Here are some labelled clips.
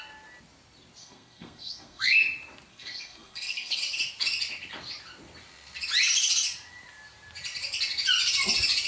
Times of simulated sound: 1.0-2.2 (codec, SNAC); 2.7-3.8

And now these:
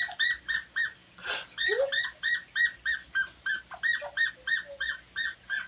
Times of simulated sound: none

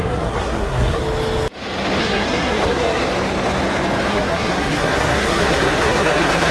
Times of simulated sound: 0.0-1.0 (codec, SNAC); 2.0-3.0; 4.1-6.5

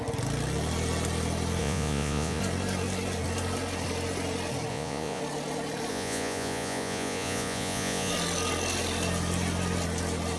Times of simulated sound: 1.6-2.4 (vocoder, Vocos); 4.7-5.2; 5.9-8.1

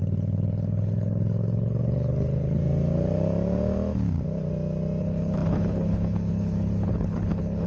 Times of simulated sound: 0.0-2.6 (codec, HILCodec); 5.0-7.7

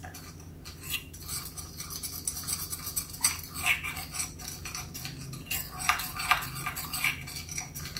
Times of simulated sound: none